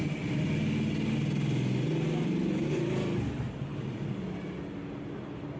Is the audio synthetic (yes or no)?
no